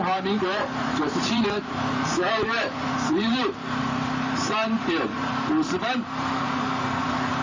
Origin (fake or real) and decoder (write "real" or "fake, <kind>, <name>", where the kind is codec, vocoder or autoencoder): fake, vocoder, BigVGAN v2